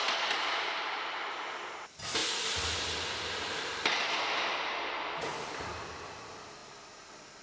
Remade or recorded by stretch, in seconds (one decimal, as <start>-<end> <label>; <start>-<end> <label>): 0.0-7.4 recorded

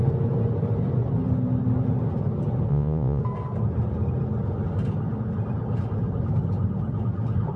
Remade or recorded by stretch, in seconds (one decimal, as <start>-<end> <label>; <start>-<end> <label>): 0.0-2.7 recorded; 2.7-3.2 remade; 3.2-7.6 recorded

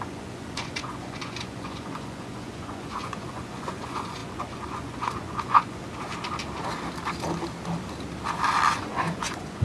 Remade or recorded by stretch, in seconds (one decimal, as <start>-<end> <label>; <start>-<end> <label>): 0.0-5.8 remade; 5.8-8.7 recorded; 8.7-9.6 remade

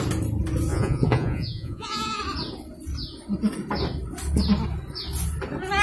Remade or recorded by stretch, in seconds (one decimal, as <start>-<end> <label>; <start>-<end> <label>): 0.0-0.7 recorded; 0.7-2.2 remade; 2.2-5.8 recorded

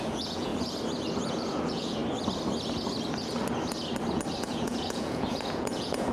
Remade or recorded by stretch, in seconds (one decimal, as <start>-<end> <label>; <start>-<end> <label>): 0.0-0.5 remade; 0.5-1.3 recorded; 1.3-2.0 remade; 2.0-4.4 recorded; 4.4-6.1 remade

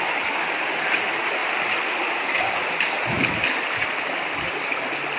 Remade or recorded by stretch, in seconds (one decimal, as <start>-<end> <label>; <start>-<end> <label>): 0.0-5.2 recorded